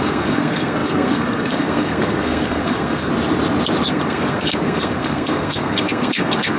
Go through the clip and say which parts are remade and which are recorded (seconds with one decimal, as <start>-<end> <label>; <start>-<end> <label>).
0.0-3.1 remade; 3.1-3.9 recorded; 3.9-6.6 remade